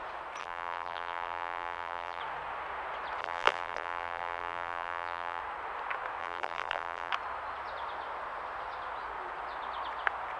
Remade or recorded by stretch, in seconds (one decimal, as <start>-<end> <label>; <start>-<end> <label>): 0.0-0.4 recorded; 0.4-2.2 remade; 2.2-3.2 recorded; 3.2-5.4 remade; 5.4-6.2 recorded; 6.2-7.1 remade; 7.1-10.4 recorded